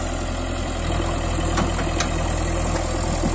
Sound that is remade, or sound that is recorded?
recorded